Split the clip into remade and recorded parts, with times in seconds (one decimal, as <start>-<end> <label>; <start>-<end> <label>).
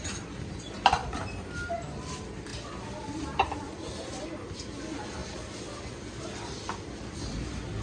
0.0-7.8 recorded